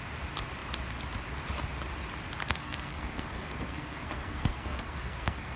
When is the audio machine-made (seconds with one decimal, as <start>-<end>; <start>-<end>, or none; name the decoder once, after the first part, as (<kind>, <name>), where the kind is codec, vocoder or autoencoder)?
2.4-5.6 (codec, SNAC)